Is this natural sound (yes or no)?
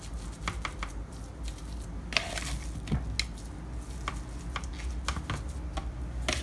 yes